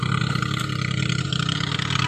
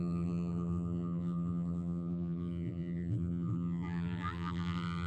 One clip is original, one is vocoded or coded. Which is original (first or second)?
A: first